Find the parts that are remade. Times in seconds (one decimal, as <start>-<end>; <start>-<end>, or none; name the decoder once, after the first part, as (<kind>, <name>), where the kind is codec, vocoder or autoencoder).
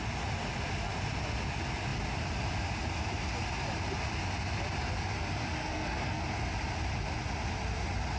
5.6-6.2 (codec, SNAC)